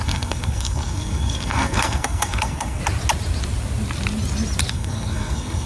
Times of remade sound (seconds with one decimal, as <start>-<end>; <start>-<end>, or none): 0.0-2.8; 4.7-5.7